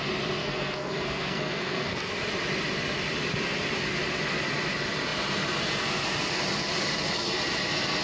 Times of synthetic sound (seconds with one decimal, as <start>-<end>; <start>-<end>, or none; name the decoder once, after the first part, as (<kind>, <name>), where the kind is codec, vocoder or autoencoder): 0.4-2.1 (codec, SNAC)